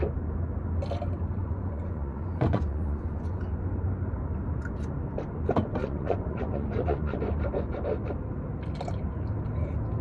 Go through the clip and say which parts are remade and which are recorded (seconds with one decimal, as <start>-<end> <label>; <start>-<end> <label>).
0.0-1.4 recorded; 1.4-3.4 remade; 3.4-5.8 recorded; 5.8-7.2 remade; 7.2-10.0 recorded